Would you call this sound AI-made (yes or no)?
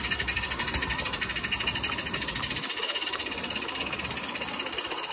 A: no